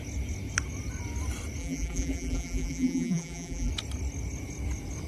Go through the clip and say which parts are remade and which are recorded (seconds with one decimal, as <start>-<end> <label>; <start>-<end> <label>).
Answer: 0.0-1.6 recorded; 1.6-3.7 remade; 3.7-5.1 recorded